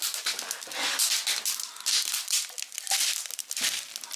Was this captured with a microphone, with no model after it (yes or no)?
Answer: yes